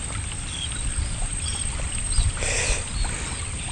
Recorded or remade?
recorded